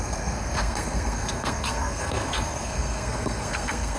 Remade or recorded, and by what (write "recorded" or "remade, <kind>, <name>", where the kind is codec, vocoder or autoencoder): remade, codec, SNAC